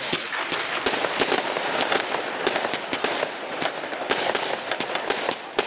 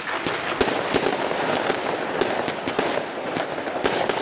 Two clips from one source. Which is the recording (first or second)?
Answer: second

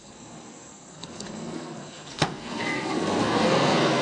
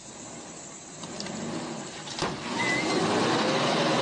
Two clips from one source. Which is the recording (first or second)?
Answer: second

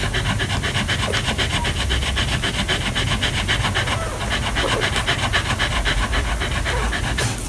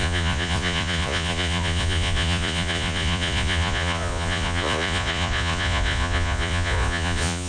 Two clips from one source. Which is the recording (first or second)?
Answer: first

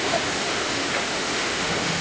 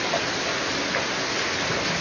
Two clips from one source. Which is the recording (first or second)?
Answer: second